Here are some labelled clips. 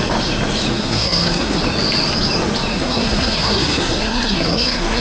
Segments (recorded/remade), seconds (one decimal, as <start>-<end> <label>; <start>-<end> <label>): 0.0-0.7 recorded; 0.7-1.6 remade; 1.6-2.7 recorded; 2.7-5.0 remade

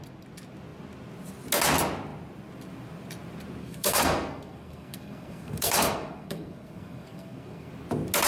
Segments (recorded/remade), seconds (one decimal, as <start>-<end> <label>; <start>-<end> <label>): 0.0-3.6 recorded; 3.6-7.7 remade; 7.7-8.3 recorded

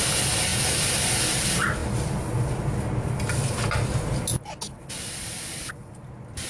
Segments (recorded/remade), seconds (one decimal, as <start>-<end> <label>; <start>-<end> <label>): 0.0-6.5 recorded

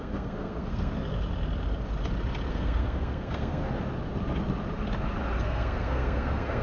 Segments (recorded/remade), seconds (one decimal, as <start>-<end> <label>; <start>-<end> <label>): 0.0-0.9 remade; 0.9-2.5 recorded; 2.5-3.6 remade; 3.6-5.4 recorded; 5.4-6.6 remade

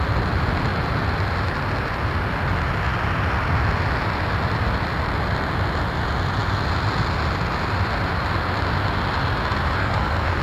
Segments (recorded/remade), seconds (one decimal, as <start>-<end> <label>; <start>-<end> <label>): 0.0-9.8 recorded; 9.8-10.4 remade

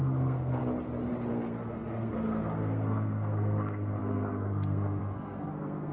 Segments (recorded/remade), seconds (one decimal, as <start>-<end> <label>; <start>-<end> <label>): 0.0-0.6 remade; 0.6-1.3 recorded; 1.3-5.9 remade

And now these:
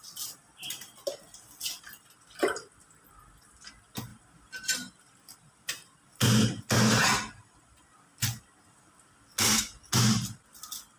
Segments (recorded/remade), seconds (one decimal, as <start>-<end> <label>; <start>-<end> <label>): 0.0-11.0 recorded

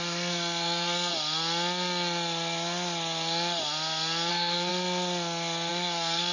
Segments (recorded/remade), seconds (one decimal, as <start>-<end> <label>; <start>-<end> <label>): 0.0-1.1 remade; 1.1-4.3 recorded; 4.3-4.7 remade; 4.7-5.7 recorded; 5.7-6.3 remade